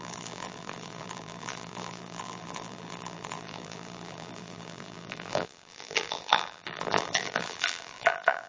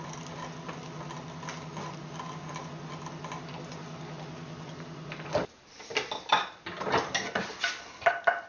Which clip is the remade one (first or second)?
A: first